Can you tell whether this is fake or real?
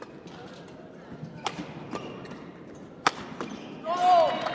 real